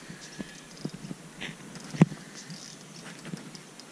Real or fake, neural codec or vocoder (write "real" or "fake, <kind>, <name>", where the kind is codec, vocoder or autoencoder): real